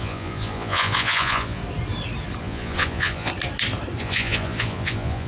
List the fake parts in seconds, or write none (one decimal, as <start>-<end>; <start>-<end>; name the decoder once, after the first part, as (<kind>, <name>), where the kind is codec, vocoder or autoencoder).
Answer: 0.0-1.6 (vocoder, Vocos); 2.4-3.3; 4.0-5.3